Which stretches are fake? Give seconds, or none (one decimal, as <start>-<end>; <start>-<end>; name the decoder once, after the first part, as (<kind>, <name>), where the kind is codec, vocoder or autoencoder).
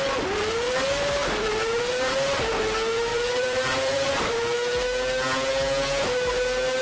3.1-4.3 (vocoder, BigVGAN v2)